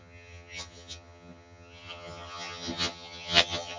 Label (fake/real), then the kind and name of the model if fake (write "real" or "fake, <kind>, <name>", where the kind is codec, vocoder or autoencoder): fake, vocoder, HiFi-GAN